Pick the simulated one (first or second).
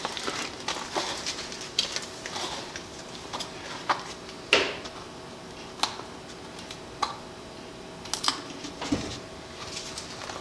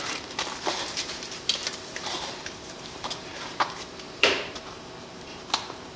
second